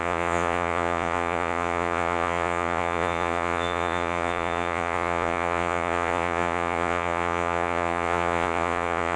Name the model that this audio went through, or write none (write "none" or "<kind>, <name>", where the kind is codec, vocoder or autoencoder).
vocoder, Vocos